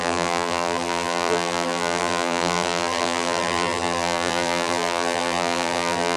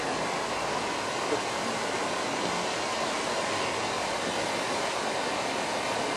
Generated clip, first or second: first